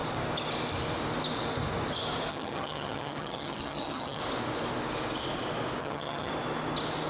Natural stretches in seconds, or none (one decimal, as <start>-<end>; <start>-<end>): 0.0-2.3; 4.2-5.8; 6.3-7.1

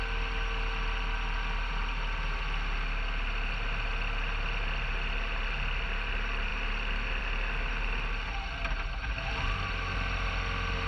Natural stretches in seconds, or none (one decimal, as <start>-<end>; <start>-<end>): 0.0-10.9

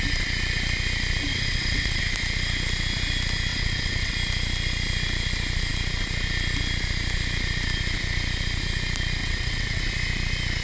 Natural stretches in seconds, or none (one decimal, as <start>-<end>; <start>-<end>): 0.0-1.3; 2.0-3.5; 4.1-9.2; 9.8-10.6

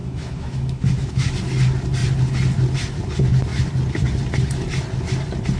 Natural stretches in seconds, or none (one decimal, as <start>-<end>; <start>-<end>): 1.3-5.6

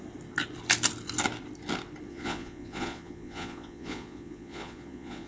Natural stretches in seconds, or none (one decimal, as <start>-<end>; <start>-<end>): 0.0-2.1

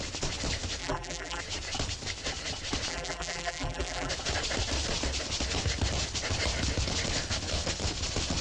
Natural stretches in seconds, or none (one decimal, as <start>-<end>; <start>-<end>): 0.0-0.8; 1.4-2.9; 4.1-8.4

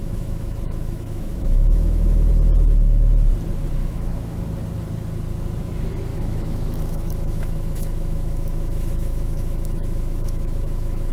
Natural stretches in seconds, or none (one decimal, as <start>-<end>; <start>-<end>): 2.3-3.8; 4.4-6.1